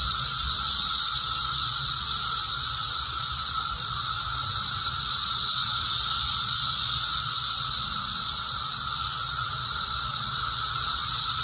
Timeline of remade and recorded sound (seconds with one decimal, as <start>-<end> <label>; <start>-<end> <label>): 0.0-4.4 remade; 4.4-5.0 recorded; 5.0-11.4 remade